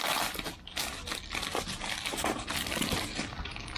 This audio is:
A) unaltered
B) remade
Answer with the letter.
A